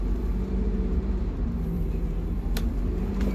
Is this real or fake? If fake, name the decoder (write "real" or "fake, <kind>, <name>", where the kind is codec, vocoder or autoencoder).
fake, vocoder, BigVGAN v2